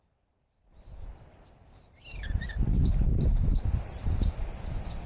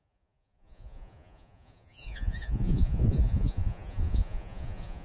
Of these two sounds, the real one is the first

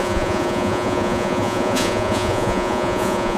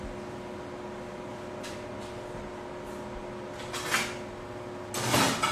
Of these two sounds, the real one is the second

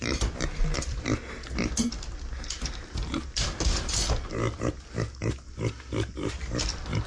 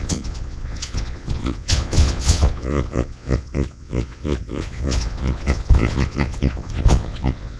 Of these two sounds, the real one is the first